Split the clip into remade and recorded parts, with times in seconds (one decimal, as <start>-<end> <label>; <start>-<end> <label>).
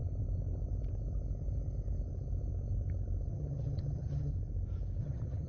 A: 0.0-3.3 recorded; 3.3-4.3 remade; 4.3-5.0 recorded; 5.0-5.5 remade